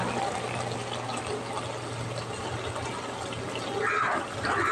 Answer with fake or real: real